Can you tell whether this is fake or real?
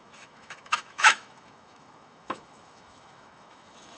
fake